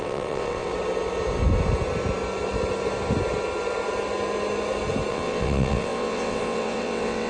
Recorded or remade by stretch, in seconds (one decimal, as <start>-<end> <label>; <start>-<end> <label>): 0.0-0.7 remade; 0.7-5.1 recorded; 5.1-7.3 remade